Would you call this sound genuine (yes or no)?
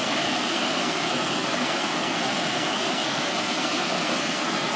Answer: no